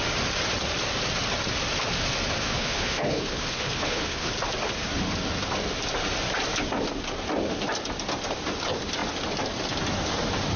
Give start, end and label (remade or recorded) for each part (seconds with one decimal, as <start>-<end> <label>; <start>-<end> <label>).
0.0-2.4 recorded; 2.4-4.3 remade; 4.3-10.6 recorded